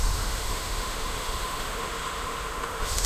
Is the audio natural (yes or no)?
no